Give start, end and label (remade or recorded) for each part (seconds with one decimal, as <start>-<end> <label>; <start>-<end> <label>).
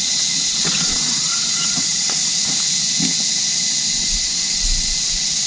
0.0-2.2 remade; 2.2-4.0 recorded; 4.0-5.5 remade